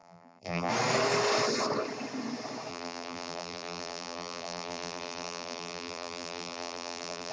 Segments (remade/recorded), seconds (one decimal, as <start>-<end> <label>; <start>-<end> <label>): 0.0-0.7 remade; 0.7-2.7 recorded; 2.7-7.3 remade